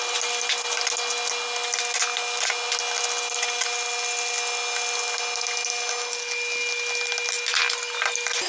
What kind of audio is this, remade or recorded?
recorded